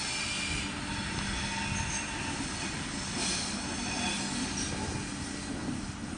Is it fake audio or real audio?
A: real